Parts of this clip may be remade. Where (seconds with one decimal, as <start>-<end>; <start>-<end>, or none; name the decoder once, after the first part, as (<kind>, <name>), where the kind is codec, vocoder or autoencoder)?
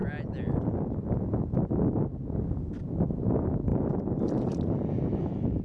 none